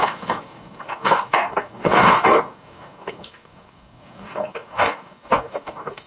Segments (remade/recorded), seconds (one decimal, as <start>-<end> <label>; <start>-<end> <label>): 0.0-6.1 remade